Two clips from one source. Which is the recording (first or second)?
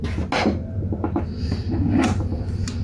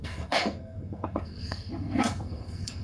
first